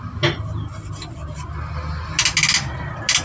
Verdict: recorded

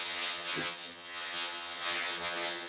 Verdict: remade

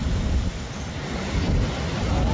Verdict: recorded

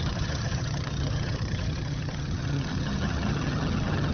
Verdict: remade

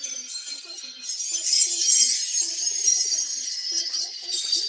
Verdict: remade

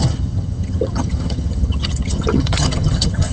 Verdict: remade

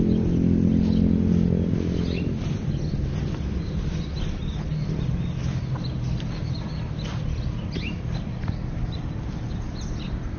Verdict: recorded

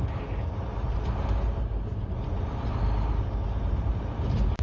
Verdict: recorded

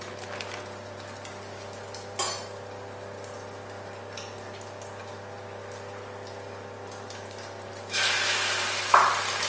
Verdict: recorded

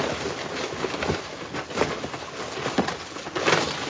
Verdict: recorded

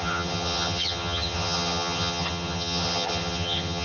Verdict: remade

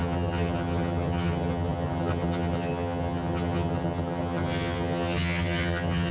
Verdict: remade